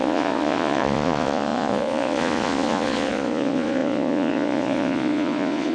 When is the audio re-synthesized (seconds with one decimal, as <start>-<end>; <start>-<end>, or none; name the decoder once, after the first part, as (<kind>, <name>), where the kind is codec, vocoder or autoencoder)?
0.0-5.7 (vocoder, Vocos)